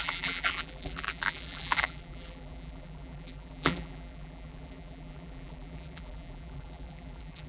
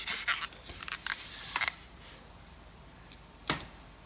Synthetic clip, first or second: first